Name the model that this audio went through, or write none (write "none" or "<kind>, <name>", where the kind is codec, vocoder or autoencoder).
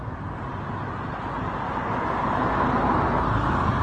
none